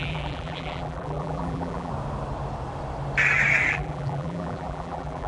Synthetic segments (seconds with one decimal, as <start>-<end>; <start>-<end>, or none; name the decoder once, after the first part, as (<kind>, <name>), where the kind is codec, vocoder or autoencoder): 0.0-1.9 (vocoder, BigVGAN v2); 3.7-5.3